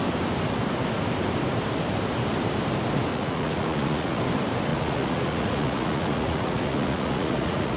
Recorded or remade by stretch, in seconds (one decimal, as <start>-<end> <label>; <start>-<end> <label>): 0.0-3.1 recorded; 3.1-4.2 remade; 4.2-4.7 recorded; 4.7-7.8 remade